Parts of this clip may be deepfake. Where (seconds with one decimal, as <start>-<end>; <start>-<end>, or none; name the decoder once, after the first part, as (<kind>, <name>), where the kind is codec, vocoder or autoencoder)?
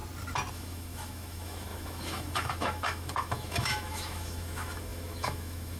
0.5-5.8 (autoencoder, DAC-VAE)